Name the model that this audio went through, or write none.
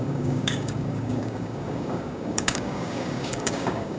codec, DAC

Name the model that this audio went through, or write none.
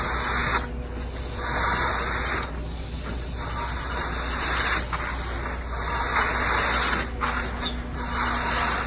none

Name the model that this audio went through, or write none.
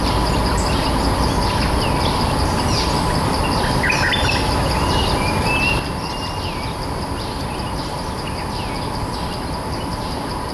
none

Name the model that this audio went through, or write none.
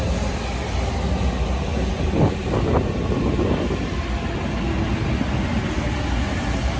none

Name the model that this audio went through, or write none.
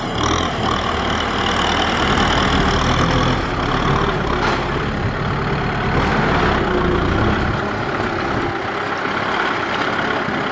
none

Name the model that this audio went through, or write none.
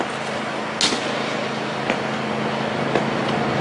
none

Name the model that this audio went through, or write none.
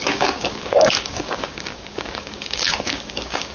codec, DAC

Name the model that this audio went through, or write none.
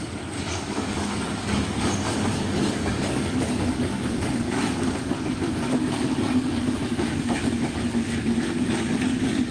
codec, DAC